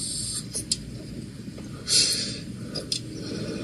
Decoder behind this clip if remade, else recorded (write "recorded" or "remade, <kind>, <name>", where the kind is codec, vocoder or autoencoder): recorded